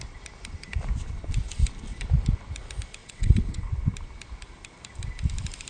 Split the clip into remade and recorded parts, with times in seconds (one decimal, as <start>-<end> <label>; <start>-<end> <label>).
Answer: 0.0-3.0 recorded; 3.0-3.7 remade; 3.7-5.7 recorded